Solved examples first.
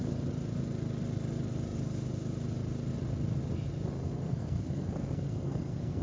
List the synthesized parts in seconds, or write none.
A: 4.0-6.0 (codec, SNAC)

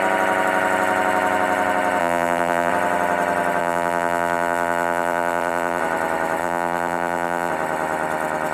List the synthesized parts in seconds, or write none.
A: 2.0-2.7 (vocoder, BigVGAN v2); 3.6-5.8; 6.4-7.5